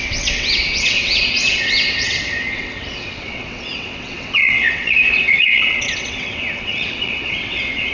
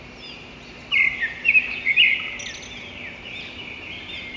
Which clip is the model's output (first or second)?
first